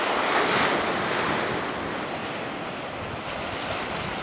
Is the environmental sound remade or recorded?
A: recorded